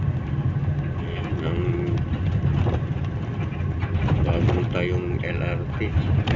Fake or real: real